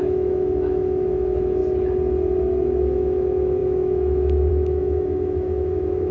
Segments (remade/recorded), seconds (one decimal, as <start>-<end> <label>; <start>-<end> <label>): 0.0-1.6 remade; 1.6-2.8 recorded; 2.8-6.1 remade